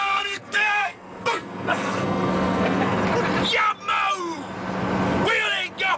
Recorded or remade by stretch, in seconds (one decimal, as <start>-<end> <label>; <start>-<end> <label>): 0.0-3.0 remade; 3.0-6.0 recorded